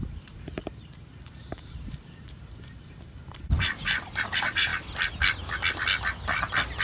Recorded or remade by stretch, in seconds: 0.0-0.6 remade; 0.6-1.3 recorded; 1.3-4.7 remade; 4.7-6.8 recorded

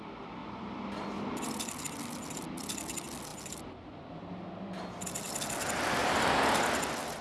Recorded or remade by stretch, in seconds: 0.0-0.4 recorded; 0.4-1.8 remade; 1.8-3.3 recorded; 3.3-4.4 remade; 4.4-6.0 recorded; 6.0-7.2 remade

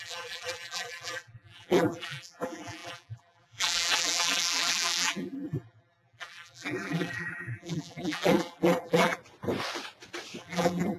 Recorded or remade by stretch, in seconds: 0.0-9.2 remade; 9.2-10.4 recorded; 10.4-11.0 remade

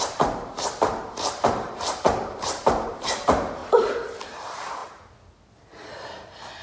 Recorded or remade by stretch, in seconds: 0.0-3.6 remade; 3.6-4.3 recorded; 4.3-4.8 remade; 4.8-6.6 recorded

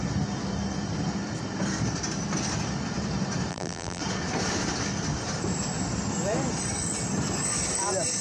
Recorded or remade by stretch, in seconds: 0.0-3.5 recorded; 3.5-4.0 remade; 4.0-8.2 recorded

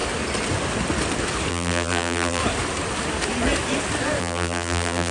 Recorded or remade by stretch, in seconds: 0.0-1.5 recorded; 1.5-2.4 remade; 2.4-4.2 recorded; 4.2-5.1 remade

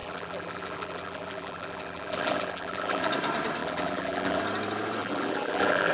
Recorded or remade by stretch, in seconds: 0.0-3.1 remade; 3.1-3.6 recorded; 3.6-4.4 remade; 4.4-5.0 recorded; 5.0-5.9 remade